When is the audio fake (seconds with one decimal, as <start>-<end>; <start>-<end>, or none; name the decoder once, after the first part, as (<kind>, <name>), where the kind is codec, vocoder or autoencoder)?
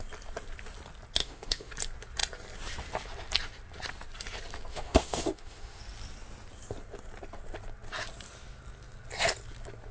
1.2-1.7 (autoencoder, DAC-VAE); 4.7-5.8